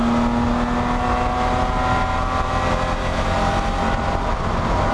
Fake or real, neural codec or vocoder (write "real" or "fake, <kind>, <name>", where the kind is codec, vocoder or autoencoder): real